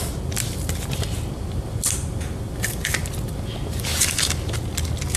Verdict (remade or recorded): recorded